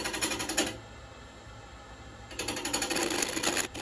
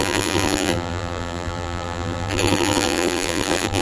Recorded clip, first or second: first